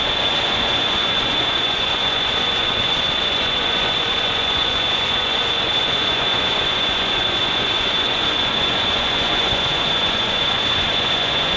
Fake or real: fake